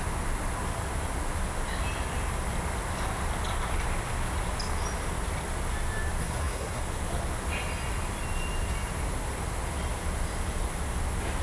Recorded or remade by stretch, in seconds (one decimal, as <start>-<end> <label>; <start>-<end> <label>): 0.0-6.2 recorded; 6.2-6.8 remade; 6.8-11.4 recorded